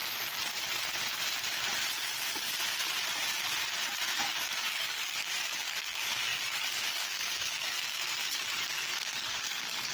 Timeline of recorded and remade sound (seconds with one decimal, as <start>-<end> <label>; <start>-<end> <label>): 0.0-4.2 recorded; 4.2-9.9 remade

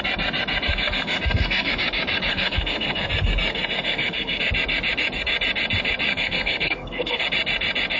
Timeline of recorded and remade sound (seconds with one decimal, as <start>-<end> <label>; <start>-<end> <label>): 0.0-0.7 recorded; 0.7-1.7 remade; 1.7-2.3 recorded; 2.3-3.1 remade; 3.1-3.5 recorded; 3.5-4.4 remade; 4.4-6.1 recorded; 6.1-7.2 remade; 7.2-8.0 recorded

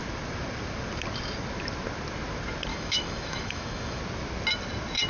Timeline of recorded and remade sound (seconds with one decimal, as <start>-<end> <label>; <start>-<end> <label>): 0.0-2.7 recorded; 2.7-4.0 remade; 4.0-5.1 recorded

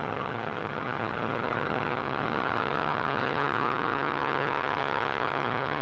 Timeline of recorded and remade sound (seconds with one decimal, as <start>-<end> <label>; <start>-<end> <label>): 0.0-5.8 remade

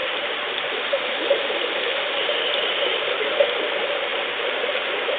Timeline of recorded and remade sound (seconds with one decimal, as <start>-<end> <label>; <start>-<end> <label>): 0.0-1.5 remade; 1.5-2.2 recorded; 2.2-3.4 remade; 3.4-5.2 recorded

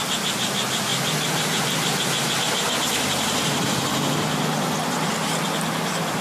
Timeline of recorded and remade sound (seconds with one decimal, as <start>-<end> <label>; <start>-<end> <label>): 0.0-6.2 recorded

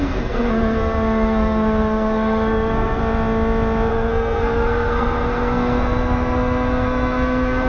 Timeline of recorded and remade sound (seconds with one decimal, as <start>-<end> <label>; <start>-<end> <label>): 0.0-3.0 remade; 3.0-3.9 recorded; 3.9-7.7 remade